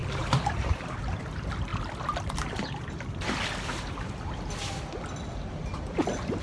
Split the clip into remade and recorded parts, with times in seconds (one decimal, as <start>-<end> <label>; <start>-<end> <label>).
0.0-1.2 remade; 1.2-6.4 recorded